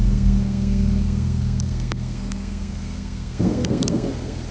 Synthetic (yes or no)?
yes